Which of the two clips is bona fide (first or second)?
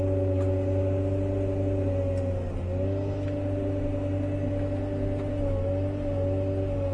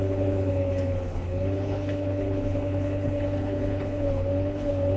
first